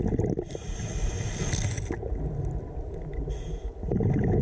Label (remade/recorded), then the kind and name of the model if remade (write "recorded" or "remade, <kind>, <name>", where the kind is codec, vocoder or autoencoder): recorded